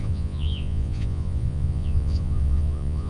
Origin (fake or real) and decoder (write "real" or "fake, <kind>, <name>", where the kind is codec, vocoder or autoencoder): fake, vocoder, Vocos